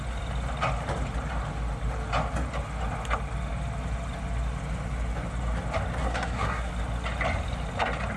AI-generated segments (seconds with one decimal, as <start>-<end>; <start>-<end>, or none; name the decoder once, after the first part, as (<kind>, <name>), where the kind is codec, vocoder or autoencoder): 6.0-6.7 (codec, SNAC)